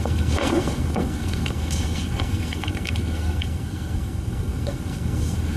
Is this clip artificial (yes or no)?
yes